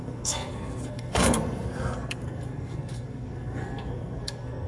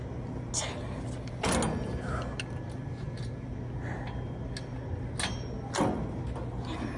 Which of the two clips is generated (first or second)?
first